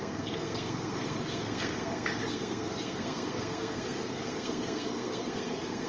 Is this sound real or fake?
fake